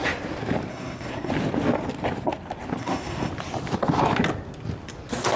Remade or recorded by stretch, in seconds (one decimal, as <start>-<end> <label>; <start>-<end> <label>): 0.0-0.7 recorded; 0.7-1.3 remade; 1.3-2.8 recorded; 2.8-3.3 remade; 3.3-5.4 recorded